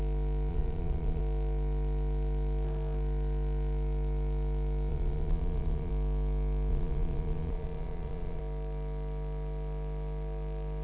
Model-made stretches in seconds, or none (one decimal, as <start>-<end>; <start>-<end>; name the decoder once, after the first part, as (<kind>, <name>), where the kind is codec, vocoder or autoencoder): 0.5-1.2 (vocoder, Vocos); 4.9-5.9; 6.7-8.4